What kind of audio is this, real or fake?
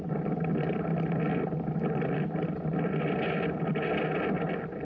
fake